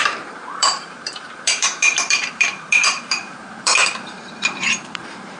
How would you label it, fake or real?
fake